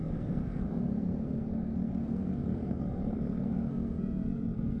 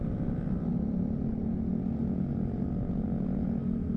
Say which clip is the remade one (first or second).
first